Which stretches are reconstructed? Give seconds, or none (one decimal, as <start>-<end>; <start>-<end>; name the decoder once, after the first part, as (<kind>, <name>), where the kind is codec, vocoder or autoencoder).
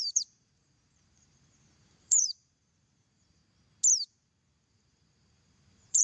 0.0-3.4 (vocoder, BigVGAN v2); 4.1-6.0